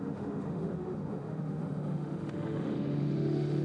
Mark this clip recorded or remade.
remade